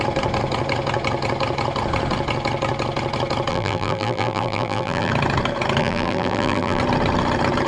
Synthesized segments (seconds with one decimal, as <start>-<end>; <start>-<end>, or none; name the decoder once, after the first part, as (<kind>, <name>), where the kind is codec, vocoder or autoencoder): 3.5-5.1 (vocoder, BigVGAN v2); 5.8-6.8